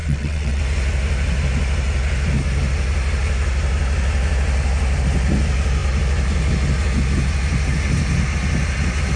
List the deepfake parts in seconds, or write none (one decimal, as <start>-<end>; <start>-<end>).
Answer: 0.0-0.6